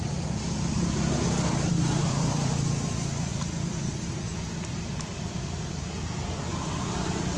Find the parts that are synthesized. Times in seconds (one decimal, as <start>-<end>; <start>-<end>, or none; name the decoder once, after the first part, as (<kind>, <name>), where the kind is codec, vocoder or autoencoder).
1.7-2.5 (vocoder, BigVGAN v2); 6.5-7.4